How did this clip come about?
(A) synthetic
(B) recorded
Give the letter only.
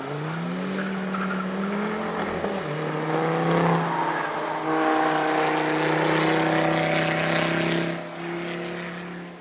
B